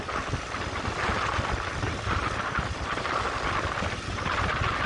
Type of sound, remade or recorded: recorded